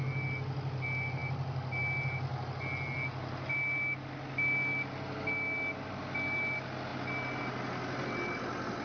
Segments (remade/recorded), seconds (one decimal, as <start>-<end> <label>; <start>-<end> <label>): 0.0-8.8 recorded